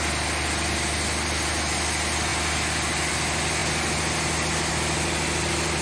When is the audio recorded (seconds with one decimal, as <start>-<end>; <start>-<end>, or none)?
0.0-5.8